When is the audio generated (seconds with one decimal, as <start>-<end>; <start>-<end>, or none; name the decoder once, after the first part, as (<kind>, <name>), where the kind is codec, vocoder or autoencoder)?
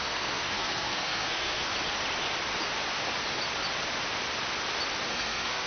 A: 0.0-1.7 (codec, SNAC); 5.1-5.7